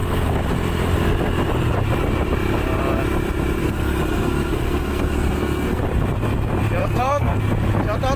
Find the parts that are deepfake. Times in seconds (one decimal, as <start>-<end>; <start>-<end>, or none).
3.6-5.8; 6.8-7.4